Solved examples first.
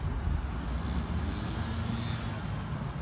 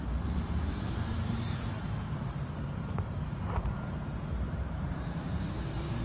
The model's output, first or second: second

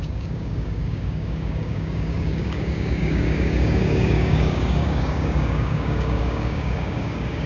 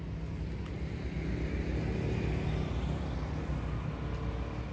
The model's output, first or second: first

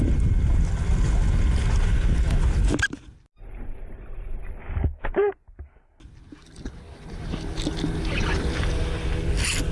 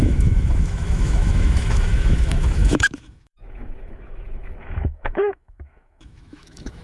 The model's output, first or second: second